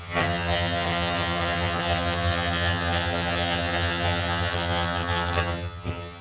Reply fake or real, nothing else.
fake